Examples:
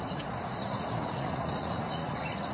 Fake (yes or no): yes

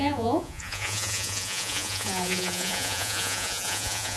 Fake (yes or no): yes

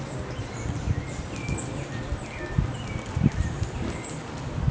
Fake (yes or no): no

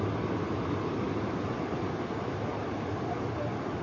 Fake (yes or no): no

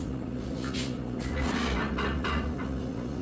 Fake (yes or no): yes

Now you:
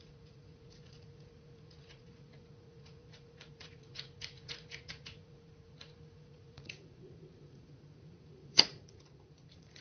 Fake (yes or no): yes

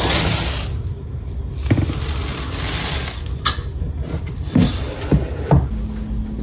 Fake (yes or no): no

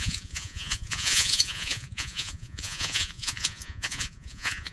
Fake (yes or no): yes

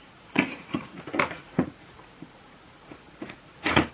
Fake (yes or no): yes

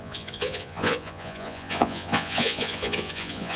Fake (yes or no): yes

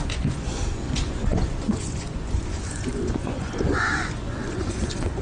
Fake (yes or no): yes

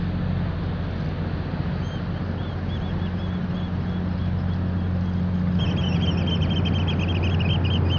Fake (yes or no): no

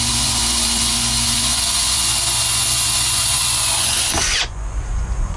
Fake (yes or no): yes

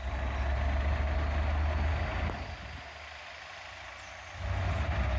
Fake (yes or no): no